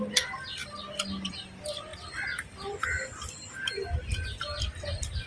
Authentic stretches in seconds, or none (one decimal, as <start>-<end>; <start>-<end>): 0.0-5.3